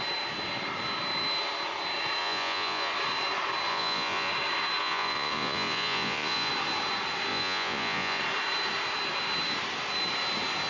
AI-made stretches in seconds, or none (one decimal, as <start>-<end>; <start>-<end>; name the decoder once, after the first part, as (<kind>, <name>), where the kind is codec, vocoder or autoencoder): 2.2-2.9 (vocoder, Vocos); 3.7-4.3; 4.8-6.5; 7.3-8.2